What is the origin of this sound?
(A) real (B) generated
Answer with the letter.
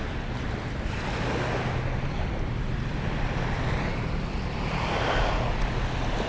A